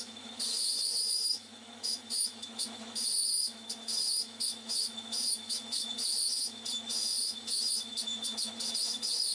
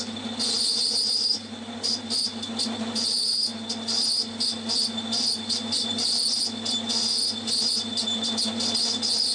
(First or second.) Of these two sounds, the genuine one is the second